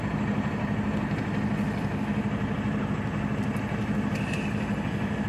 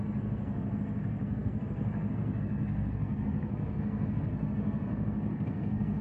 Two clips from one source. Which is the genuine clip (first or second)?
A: first